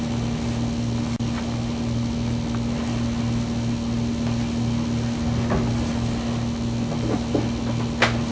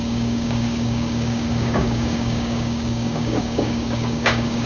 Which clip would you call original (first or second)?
first